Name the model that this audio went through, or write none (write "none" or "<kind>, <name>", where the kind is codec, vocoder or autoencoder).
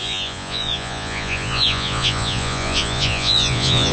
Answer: vocoder, Vocos